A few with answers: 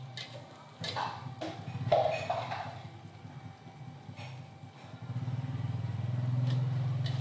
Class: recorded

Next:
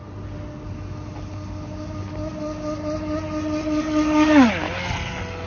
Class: recorded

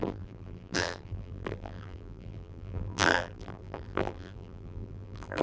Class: remade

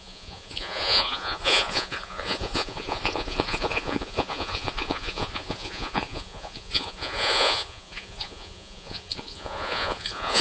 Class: remade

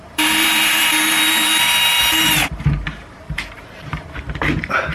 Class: remade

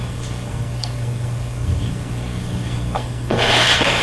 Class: remade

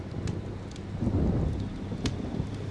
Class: recorded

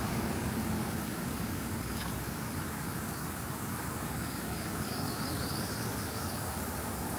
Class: remade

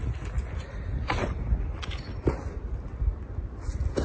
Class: recorded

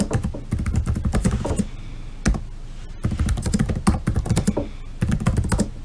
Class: recorded